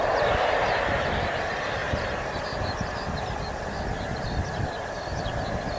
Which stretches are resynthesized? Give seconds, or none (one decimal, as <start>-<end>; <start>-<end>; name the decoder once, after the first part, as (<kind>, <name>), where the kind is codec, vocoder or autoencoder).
none